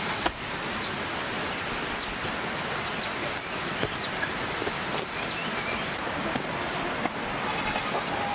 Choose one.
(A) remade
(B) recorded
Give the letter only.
B